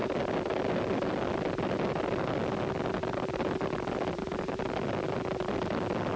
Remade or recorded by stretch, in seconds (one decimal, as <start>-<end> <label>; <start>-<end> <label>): 0.0-6.2 recorded